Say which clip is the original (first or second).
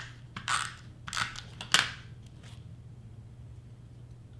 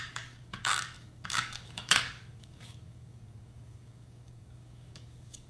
first